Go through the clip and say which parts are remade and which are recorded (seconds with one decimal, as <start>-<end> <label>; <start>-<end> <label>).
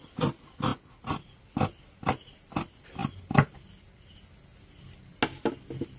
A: 0.0-6.0 recorded